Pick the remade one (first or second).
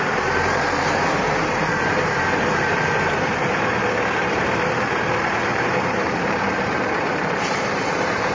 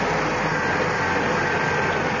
first